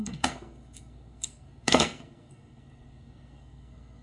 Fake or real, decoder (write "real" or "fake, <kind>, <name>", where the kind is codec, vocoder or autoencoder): fake, codec, SNAC